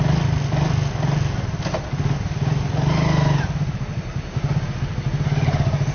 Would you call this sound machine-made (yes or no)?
no